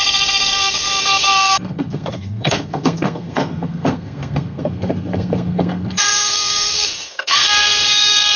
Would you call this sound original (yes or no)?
no